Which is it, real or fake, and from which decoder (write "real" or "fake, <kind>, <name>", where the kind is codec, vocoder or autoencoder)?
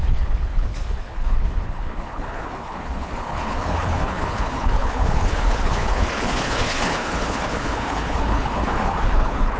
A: fake, codec, HILCodec